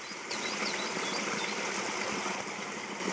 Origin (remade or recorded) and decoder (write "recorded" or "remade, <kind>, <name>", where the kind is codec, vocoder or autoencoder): recorded